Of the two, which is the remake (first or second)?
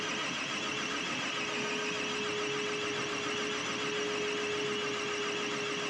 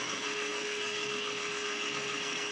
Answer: second